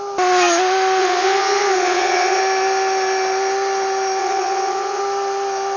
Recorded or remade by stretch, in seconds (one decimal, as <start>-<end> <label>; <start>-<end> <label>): 0.0-1.0 recorded; 1.0-2.4 remade; 2.4-4.2 recorded; 4.2-5.0 remade; 5.0-5.8 recorded